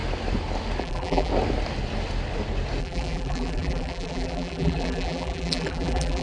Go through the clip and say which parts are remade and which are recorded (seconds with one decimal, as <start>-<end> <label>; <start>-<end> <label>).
0.0-0.8 recorded; 0.8-1.3 remade; 1.3-2.8 recorded; 2.8-6.2 remade